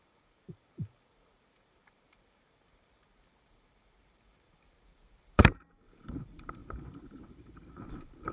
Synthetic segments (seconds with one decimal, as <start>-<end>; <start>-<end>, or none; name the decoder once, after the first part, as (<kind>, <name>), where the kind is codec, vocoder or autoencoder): 0.0-8.3 (vocoder, BigVGAN v2)